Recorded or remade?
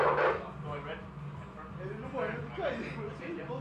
recorded